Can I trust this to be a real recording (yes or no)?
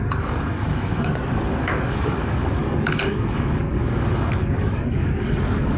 no